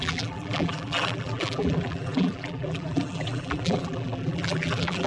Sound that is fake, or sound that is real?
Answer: fake